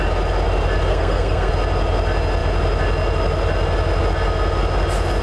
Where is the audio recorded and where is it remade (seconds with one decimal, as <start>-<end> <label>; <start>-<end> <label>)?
0.0-0.9 recorded; 0.9-1.5 remade; 1.5-5.2 recorded